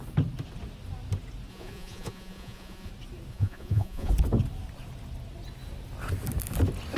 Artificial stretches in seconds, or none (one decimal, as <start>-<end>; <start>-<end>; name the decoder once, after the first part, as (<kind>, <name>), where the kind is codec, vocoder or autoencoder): 1.5-2.9 (vocoder, Vocos); 3.3-4.1